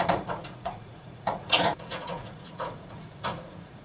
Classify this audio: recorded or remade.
remade